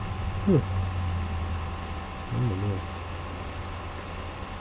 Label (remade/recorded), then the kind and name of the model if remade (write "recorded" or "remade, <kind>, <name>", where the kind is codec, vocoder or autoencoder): recorded